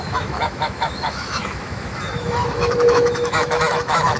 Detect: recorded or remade remade